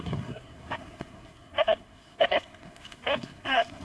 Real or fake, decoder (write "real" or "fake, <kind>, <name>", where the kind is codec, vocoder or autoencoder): fake, codec, SNAC